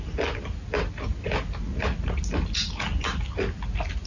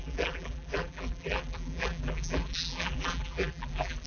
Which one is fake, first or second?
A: second